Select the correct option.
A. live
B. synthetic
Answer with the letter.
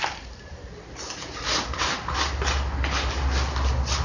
A